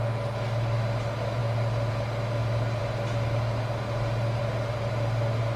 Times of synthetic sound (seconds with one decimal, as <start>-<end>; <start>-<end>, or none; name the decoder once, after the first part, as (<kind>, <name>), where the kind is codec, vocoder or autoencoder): none